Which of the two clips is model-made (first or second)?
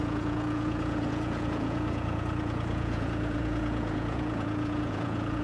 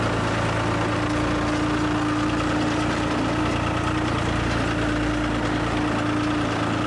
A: first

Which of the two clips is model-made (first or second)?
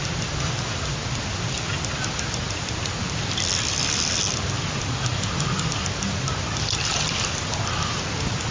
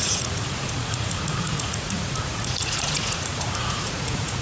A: second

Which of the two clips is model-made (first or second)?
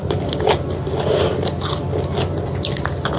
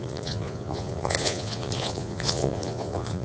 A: second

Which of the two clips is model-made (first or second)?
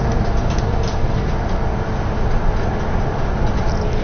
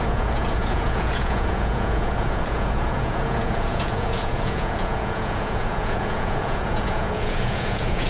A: second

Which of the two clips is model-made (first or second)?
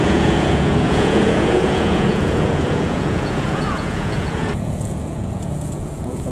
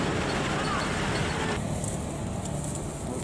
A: first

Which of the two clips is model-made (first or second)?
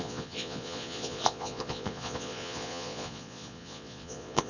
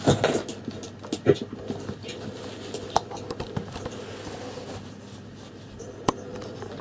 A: first